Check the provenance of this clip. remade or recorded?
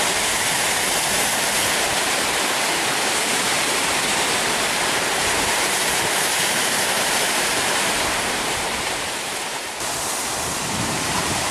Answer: remade